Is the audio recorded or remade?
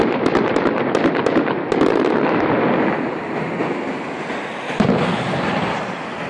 recorded